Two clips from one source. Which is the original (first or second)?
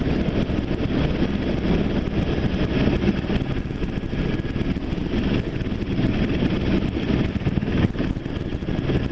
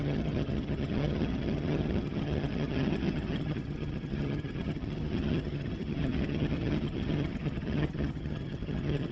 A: first